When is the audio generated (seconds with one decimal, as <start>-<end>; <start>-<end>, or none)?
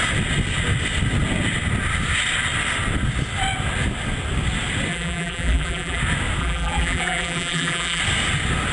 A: 4.9-6.0; 6.4-8.0